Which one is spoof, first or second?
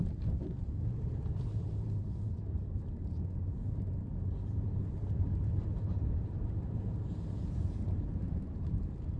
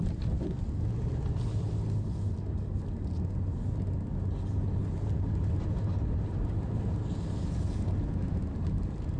first